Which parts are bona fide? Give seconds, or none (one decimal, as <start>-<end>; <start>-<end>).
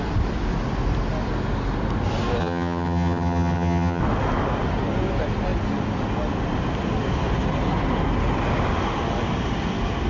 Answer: 0.0-2.4; 4.0-10.1